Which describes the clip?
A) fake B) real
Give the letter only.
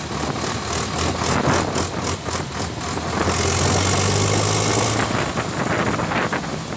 B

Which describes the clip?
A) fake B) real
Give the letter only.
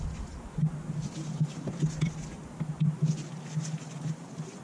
B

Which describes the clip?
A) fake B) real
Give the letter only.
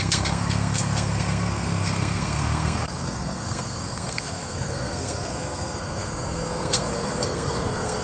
A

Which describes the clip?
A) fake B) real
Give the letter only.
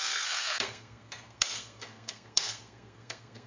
A